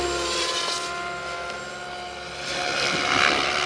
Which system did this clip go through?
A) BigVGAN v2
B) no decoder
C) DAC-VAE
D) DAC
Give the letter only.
B